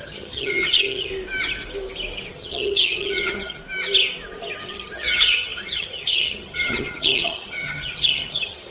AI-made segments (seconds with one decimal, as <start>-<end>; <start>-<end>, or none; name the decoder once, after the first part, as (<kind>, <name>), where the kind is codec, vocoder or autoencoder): 0.0-1.1 (vocoder, HiFi-GAN); 2.3-3.6; 4.7-8.7